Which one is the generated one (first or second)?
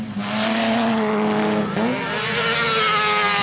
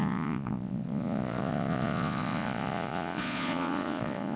second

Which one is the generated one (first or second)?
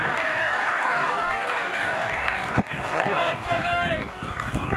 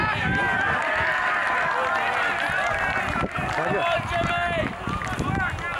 first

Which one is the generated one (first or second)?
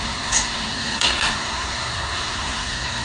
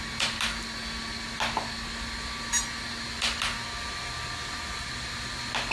first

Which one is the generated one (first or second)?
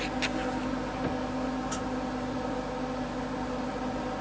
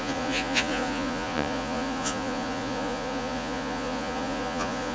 second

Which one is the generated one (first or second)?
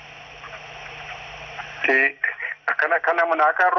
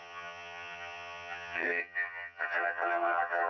second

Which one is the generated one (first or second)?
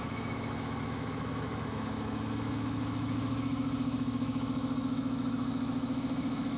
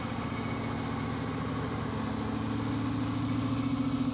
first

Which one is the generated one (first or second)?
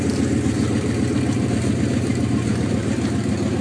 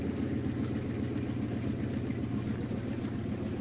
first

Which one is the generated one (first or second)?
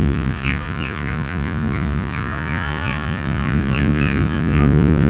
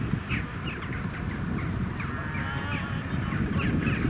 first